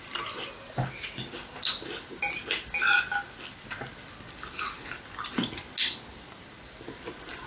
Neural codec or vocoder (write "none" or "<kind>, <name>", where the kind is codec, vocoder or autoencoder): none